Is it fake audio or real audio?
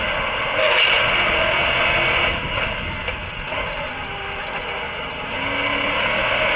real